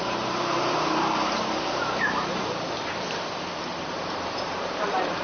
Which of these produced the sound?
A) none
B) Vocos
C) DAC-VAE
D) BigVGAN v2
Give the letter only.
D